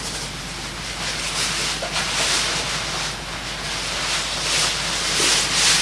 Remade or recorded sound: recorded